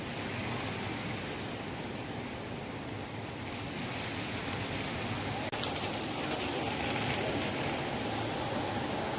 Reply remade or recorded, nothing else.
recorded